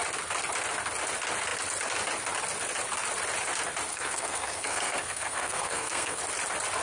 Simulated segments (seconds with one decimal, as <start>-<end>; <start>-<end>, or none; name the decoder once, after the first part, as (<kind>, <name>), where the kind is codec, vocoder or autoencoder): 3.9-6.2 (codec, SNAC)